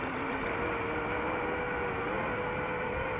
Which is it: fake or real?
real